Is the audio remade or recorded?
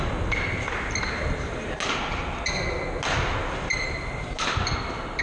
recorded